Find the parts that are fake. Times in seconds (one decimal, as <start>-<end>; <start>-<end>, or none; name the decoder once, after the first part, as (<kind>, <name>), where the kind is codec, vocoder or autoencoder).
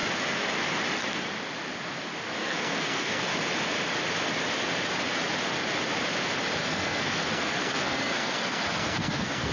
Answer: 2.4-3.2 (codec, SNAC); 6.6-9.5